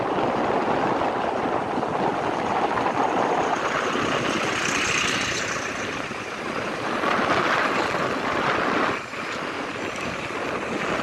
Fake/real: real